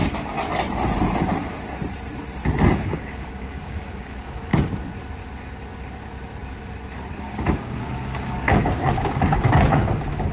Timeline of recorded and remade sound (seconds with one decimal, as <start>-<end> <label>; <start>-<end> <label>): 0.0-2.7 recorded; 2.7-4.5 remade; 4.5-7.2 recorded; 7.2-10.3 remade